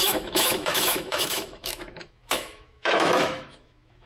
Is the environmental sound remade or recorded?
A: remade